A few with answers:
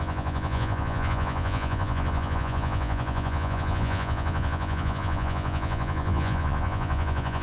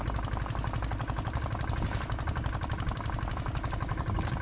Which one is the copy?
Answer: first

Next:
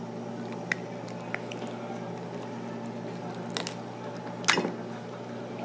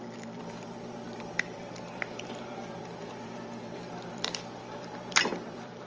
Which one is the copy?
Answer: second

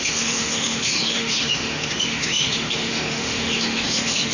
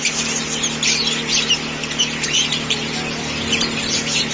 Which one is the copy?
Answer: first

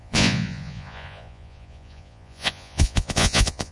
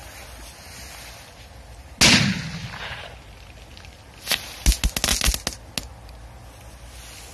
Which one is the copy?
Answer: first